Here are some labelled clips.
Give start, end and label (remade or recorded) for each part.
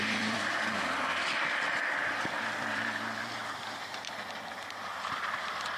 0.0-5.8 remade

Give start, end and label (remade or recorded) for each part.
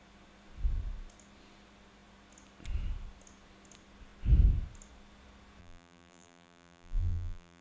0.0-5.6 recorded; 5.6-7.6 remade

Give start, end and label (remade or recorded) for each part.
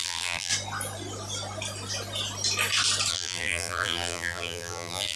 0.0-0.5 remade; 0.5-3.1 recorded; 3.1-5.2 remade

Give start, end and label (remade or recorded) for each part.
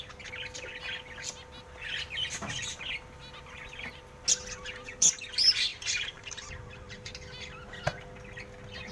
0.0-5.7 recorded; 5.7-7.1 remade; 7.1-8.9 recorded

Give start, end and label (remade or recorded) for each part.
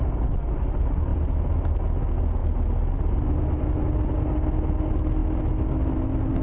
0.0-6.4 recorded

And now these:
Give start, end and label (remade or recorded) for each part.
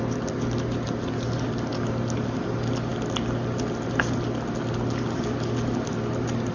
0.0-6.5 recorded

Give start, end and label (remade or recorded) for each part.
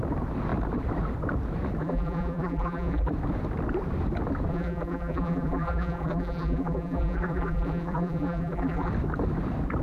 0.0-1.8 recorded; 1.8-3.1 remade; 3.1-4.5 recorded; 4.5-8.9 remade; 8.9-9.8 recorded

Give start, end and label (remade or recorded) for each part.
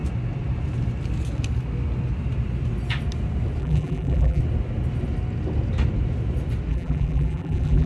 0.0-3.6 recorded; 3.6-4.4 remade; 4.4-6.7 recorded; 6.7-7.9 remade